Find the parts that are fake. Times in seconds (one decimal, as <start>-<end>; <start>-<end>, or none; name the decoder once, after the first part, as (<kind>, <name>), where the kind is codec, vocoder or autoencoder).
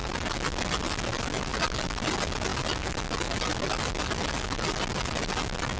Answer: none